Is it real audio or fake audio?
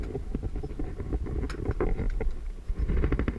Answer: real